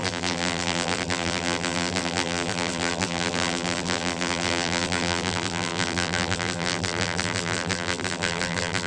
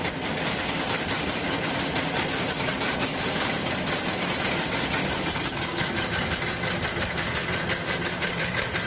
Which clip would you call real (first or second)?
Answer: second